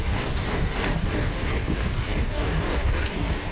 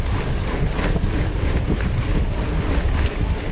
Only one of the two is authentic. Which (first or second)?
second